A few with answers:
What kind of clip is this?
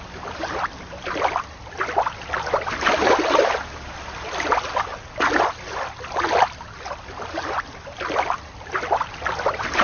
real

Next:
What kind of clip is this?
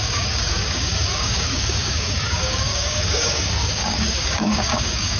fake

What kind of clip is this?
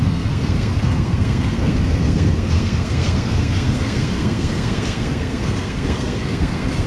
fake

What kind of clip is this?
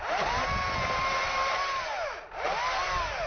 real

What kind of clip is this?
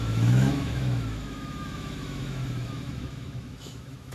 fake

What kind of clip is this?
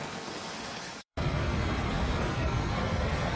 fake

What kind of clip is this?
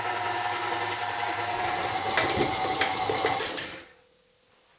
real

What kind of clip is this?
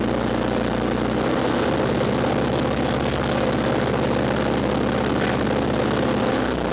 real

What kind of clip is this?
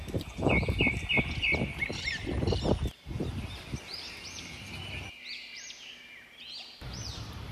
real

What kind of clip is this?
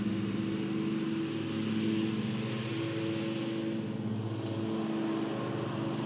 real